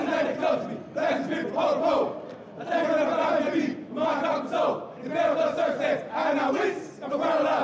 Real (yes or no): yes